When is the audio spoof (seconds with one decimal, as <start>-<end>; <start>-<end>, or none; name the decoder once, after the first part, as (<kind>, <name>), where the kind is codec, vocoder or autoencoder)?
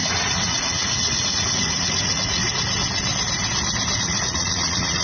0.0-2.4 (vocoder, Vocos); 4.0-5.0